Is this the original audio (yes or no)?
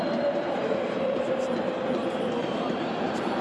no